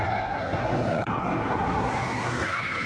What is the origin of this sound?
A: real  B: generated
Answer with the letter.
B